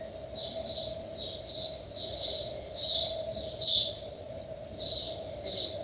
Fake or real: real